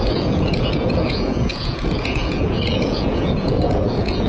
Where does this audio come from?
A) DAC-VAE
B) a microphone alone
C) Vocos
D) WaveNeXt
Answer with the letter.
C